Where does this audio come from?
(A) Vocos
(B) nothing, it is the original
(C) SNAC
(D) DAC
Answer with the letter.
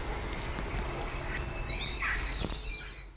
B